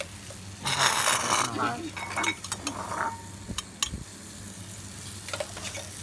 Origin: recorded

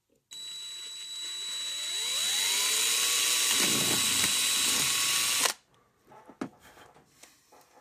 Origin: recorded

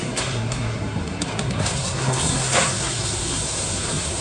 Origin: remade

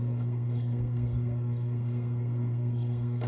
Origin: remade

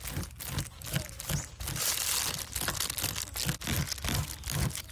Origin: recorded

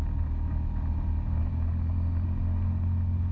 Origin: recorded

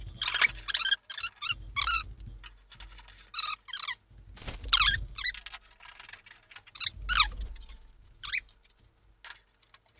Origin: recorded